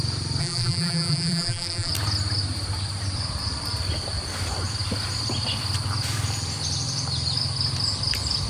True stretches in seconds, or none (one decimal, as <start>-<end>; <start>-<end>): 0.0-0.4; 1.9-8.5